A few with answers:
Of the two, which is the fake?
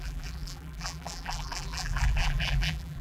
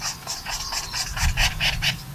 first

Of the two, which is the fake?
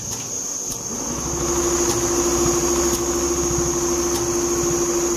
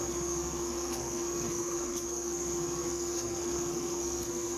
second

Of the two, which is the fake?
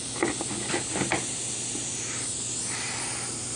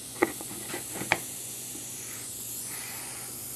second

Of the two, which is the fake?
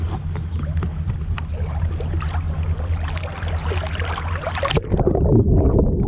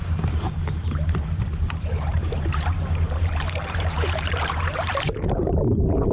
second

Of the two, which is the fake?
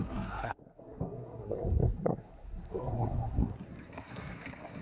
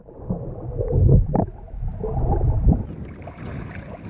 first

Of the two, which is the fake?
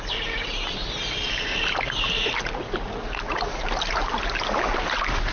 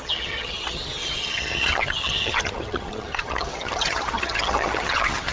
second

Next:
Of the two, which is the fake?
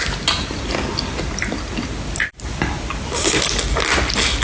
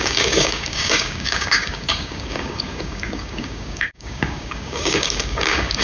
second